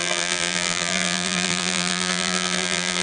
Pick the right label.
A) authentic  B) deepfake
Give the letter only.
B